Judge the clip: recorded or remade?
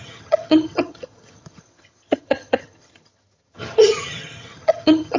remade